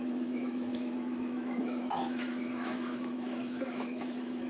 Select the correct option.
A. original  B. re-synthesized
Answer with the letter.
B